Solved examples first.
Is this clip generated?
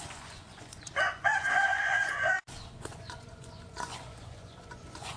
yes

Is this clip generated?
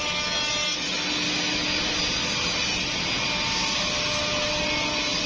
no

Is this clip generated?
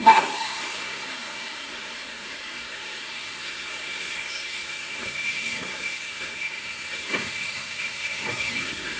yes